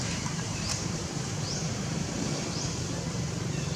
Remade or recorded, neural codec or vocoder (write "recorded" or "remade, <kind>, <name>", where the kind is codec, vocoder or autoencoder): remade, vocoder, BigVGAN v2